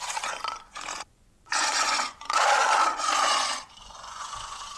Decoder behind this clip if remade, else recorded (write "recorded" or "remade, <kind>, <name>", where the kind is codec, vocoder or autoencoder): remade, vocoder, Vocos